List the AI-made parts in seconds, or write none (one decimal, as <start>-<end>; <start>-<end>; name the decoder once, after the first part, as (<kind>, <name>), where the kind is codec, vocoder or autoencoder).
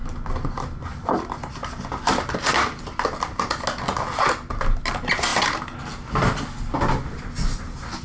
none